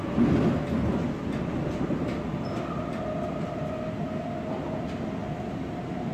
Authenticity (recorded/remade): recorded